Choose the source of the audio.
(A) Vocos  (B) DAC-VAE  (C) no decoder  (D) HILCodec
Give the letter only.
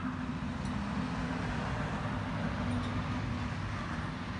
C